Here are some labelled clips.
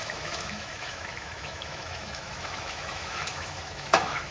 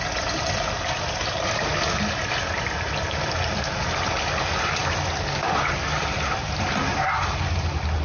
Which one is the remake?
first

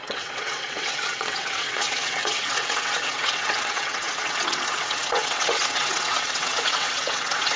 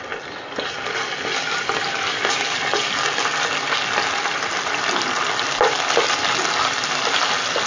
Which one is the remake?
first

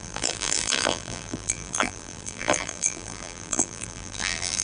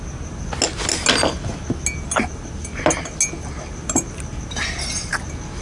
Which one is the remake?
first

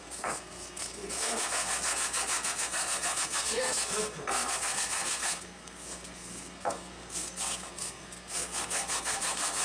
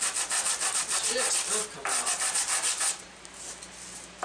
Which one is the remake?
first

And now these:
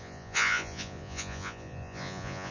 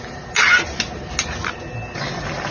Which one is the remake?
first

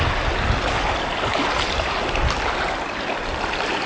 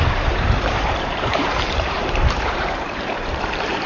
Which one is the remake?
second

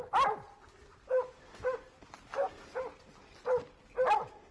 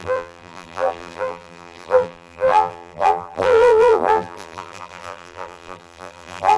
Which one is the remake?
second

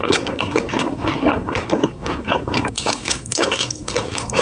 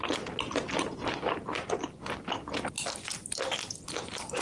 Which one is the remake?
first